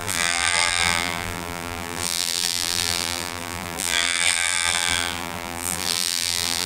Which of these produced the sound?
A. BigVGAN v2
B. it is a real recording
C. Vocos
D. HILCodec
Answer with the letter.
A